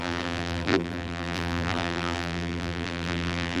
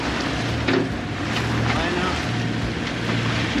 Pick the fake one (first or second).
first